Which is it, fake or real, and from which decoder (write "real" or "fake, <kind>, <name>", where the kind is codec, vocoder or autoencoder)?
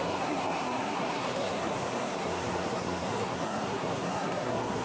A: fake, codec, SNAC